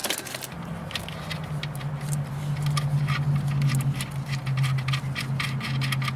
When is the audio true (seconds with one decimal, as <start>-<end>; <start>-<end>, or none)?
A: 0.0-6.2

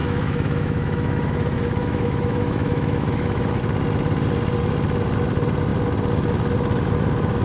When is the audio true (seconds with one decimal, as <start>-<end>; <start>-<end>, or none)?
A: 3.6-7.4

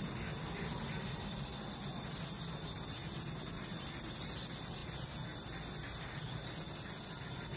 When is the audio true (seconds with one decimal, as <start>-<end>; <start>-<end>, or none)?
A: 0.0-7.6

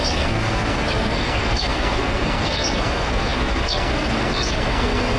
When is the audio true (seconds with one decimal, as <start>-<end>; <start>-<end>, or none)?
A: none

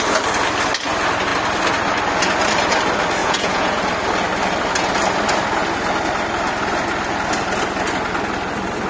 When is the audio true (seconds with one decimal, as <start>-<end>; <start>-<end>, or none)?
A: 0.0-3.2; 3.8-8.9

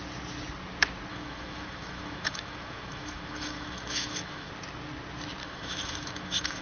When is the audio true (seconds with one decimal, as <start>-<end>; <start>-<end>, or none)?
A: 0.0-1.1; 4.5-5.4